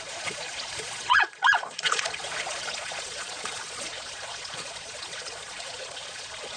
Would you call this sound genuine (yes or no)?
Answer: no